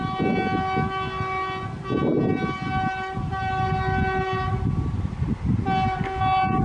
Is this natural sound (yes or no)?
yes